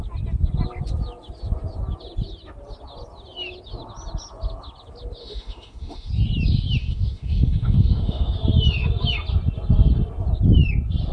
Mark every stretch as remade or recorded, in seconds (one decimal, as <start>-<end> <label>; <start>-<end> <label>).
0.0-5.2 recorded; 5.2-6.1 remade; 6.1-6.8 recorded; 6.8-8.3 remade; 8.3-11.1 recorded